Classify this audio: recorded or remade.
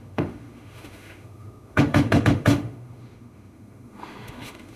remade